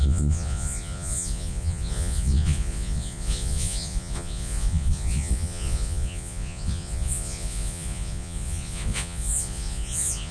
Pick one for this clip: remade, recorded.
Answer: remade